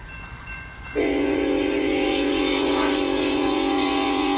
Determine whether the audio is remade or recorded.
remade